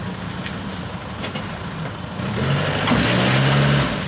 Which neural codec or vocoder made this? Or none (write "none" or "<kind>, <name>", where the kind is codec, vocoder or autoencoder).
none